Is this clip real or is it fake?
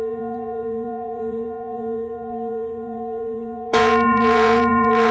fake